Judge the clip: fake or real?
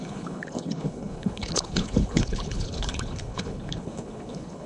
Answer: fake